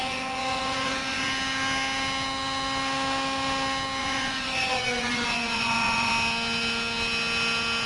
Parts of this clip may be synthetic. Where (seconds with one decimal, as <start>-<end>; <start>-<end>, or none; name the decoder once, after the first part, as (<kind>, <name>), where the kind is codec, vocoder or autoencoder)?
0.0-1.3 (vocoder, Vocos); 4.0-6.1